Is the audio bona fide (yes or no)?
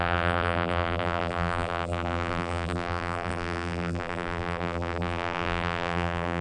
no